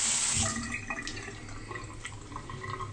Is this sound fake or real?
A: real